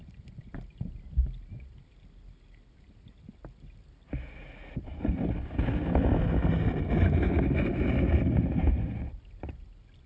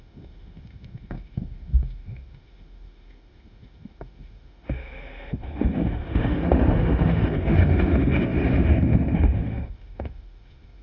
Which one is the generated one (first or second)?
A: second